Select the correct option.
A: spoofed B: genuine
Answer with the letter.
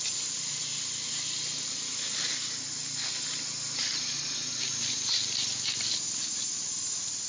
B